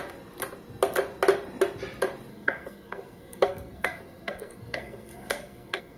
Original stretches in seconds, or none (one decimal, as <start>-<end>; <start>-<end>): 0.0-2.3